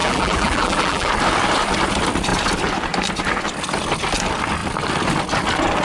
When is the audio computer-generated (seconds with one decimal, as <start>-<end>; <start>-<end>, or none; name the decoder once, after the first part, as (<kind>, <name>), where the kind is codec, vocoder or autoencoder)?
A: 0.0-1.1 (vocoder, BigVGAN v2)